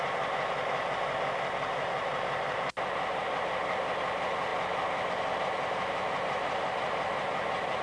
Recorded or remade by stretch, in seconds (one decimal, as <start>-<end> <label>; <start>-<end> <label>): 0.0-7.8 recorded